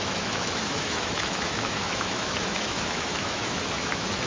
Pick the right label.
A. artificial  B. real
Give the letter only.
A